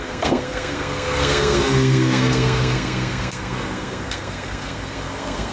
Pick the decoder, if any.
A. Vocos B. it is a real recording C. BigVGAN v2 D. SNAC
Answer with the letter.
D